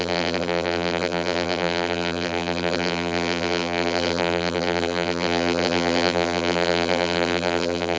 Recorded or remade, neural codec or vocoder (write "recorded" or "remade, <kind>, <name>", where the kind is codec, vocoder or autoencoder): remade, vocoder, BigVGAN v2